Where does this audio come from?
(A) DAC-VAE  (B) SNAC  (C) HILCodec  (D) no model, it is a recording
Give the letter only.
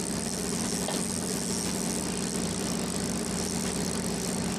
D